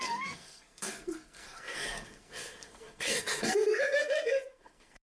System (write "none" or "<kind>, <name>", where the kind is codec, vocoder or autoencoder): codec, SNAC